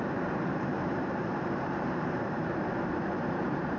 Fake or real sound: fake